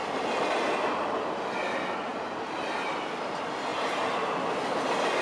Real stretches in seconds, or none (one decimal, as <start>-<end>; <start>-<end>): 0.0-5.2